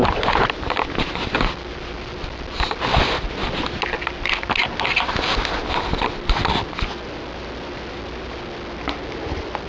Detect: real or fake real